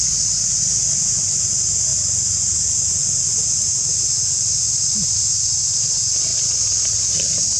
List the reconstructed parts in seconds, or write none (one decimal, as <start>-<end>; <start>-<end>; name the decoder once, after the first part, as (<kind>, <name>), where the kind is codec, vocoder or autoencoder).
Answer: none